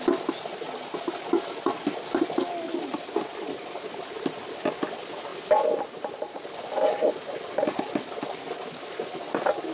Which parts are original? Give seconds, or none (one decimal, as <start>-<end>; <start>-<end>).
0.0-9.7